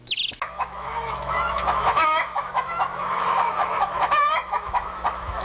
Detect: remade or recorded remade